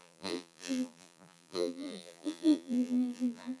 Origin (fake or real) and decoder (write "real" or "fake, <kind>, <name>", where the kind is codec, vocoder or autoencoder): fake, vocoder, BigVGAN v2